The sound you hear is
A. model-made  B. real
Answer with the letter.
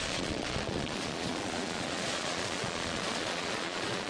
A